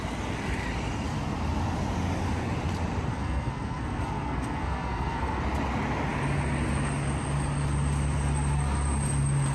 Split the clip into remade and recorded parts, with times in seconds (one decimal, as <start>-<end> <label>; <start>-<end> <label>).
0.0-3.1 recorded; 3.1-5.4 remade; 5.4-9.5 recorded